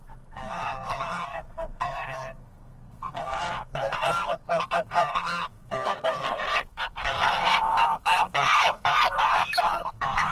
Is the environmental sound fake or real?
fake